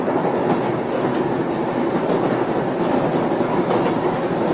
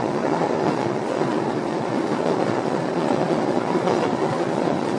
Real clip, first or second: first